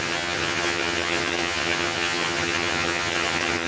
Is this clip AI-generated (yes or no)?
yes